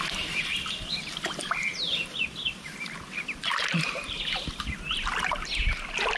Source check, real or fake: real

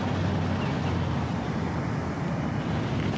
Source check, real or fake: real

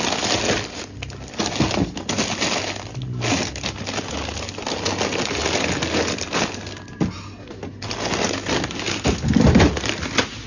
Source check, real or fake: real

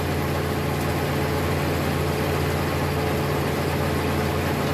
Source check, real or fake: real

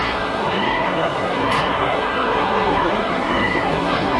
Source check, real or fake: fake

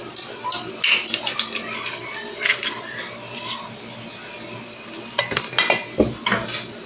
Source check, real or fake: real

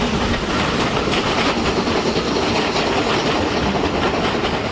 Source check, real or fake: real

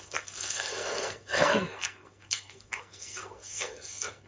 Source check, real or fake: fake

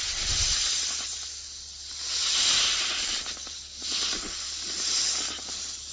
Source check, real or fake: real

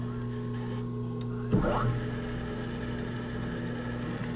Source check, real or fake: real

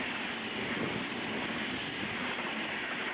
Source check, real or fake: real